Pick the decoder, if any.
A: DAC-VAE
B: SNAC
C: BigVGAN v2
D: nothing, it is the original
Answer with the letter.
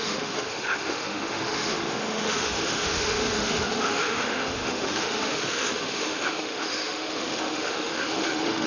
A